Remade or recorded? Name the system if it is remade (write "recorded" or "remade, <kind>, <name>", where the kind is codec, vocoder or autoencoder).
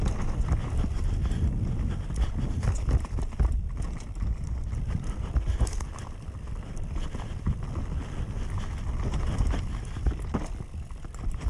recorded